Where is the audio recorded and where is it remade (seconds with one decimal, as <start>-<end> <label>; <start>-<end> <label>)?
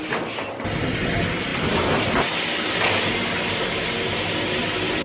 0.0-5.0 recorded